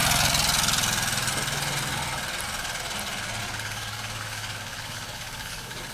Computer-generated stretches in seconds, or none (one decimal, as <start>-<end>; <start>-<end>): 3.4-5.9